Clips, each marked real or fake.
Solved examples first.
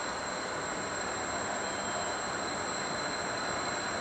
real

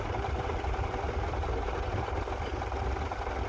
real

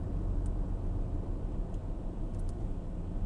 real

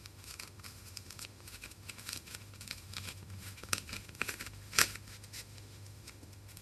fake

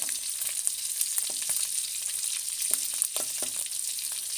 real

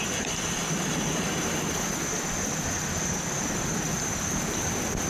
real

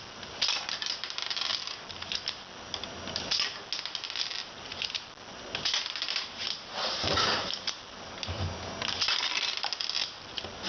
real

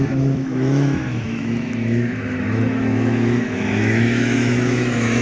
fake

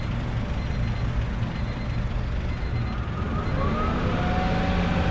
real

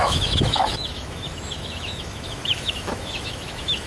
fake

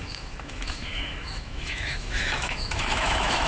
fake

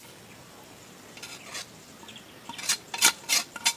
real